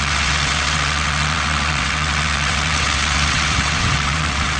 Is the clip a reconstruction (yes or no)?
yes